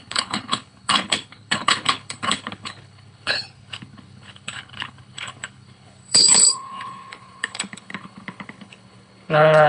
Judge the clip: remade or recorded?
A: remade